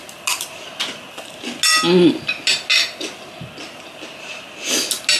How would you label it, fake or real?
real